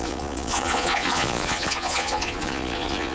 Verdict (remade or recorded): remade